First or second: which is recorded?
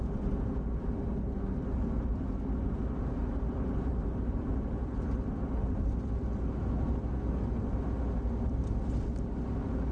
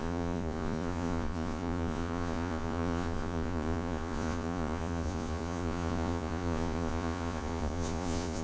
first